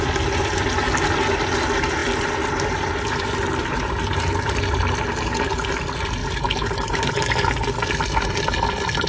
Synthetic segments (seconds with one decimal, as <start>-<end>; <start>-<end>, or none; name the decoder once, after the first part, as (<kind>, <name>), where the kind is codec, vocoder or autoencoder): 3.6-4.8 (vocoder, BigVGAN v2); 6.2-7.2